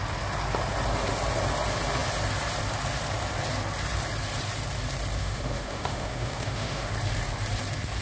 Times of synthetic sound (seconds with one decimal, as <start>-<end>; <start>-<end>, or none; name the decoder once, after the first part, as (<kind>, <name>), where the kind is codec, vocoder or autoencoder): 5.2-6.9 (autoencoder, DAC-VAE)